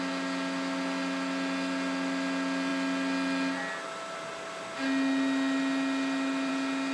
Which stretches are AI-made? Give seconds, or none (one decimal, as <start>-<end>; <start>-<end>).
none